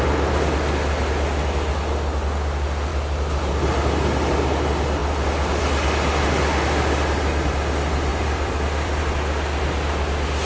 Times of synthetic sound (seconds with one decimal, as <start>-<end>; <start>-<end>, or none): 8.1-9.0